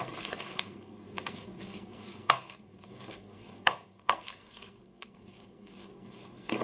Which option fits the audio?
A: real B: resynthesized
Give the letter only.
B